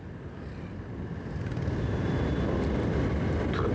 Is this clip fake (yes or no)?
no